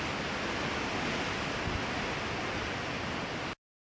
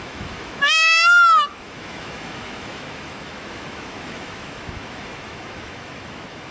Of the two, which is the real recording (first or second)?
first